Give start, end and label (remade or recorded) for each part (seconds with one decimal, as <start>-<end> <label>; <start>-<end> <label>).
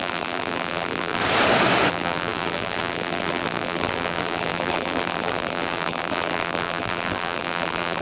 0.0-1.2 remade; 1.2-1.9 recorded; 1.9-8.0 remade